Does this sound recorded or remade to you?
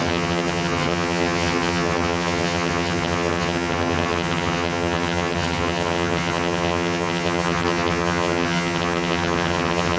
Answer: remade